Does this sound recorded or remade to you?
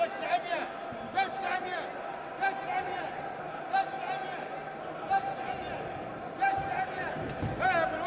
recorded